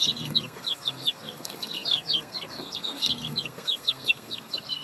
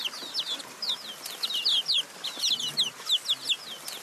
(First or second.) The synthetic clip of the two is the first